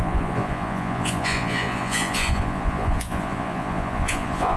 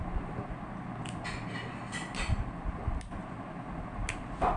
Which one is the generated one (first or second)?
first